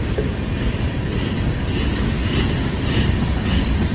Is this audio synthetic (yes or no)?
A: no